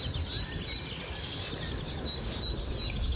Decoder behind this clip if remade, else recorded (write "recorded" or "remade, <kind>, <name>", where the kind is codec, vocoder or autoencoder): recorded